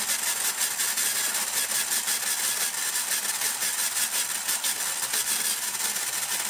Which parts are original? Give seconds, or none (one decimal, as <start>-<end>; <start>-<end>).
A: 0.0-6.5